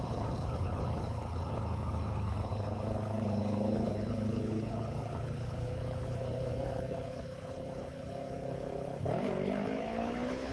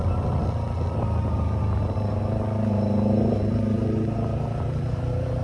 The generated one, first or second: first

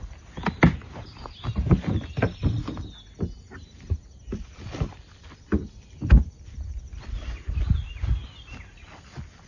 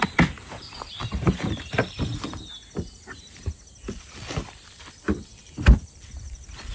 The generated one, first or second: second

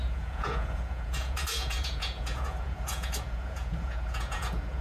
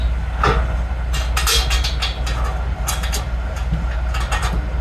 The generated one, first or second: first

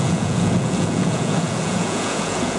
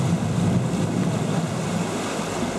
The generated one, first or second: first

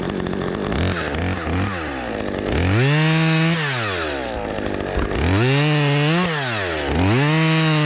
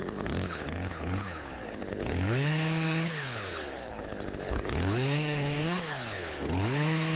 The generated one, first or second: second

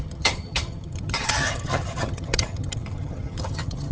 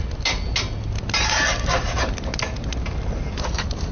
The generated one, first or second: first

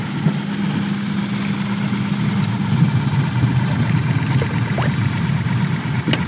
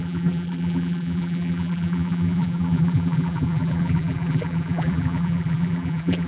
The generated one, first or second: second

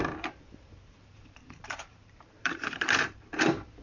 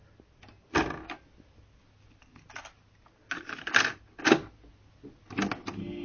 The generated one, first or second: first